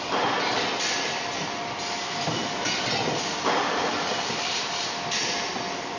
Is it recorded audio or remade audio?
recorded